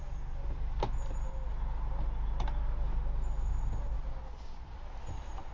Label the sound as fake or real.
real